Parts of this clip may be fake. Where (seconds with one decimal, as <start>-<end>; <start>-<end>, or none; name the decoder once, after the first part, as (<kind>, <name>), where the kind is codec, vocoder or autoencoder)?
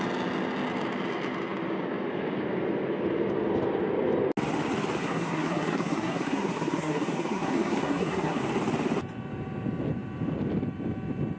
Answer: 5.0-8.4 (codec, SNAC)